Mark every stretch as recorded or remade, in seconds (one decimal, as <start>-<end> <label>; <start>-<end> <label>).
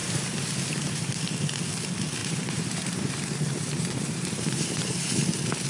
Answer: 0.0-1.2 remade; 1.2-2.2 recorded; 2.2-5.3 remade; 5.3-5.7 recorded